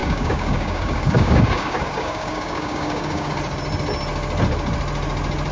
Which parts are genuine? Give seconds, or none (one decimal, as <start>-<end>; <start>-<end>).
3.3-5.5